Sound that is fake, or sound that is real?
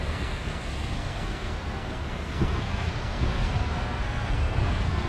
fake